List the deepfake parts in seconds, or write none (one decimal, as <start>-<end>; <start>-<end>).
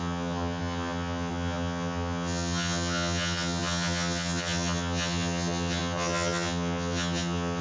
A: 0.0-7.6